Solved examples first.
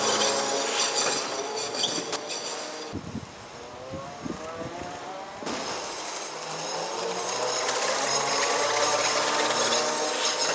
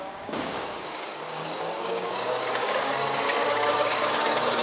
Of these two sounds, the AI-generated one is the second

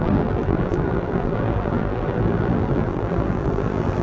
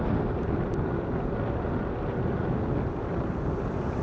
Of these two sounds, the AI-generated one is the first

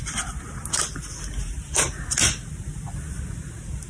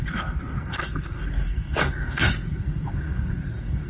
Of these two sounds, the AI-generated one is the second